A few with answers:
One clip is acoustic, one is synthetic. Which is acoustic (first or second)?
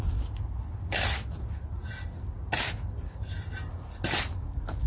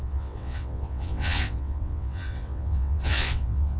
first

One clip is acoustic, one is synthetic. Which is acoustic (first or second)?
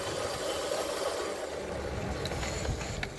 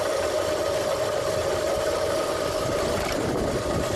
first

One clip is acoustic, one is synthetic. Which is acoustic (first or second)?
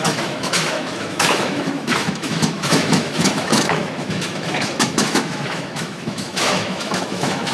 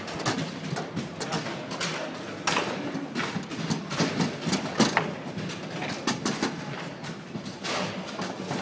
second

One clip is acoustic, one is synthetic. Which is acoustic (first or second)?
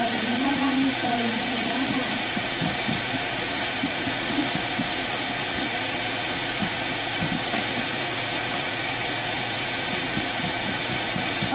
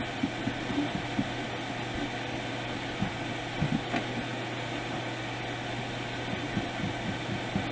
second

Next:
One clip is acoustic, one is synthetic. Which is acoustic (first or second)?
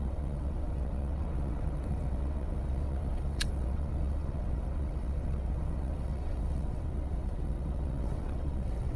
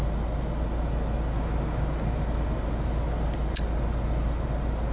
second